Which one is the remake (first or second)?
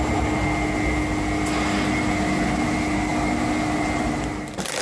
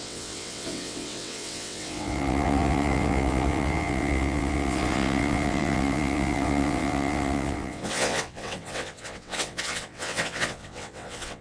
second